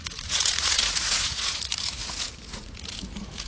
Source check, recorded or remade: remade